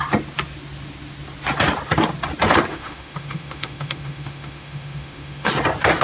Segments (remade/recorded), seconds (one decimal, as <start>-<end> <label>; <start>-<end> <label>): 0.0-2.7 recorded; 2.7-5.5 remade; 5.5-6.0 recorded